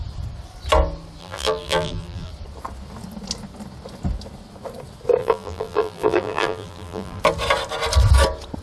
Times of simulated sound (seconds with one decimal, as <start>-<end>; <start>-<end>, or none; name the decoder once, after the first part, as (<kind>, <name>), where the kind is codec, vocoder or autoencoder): 1.2-2.3 (vocoder, BigVGAN v2); 5.2-7.2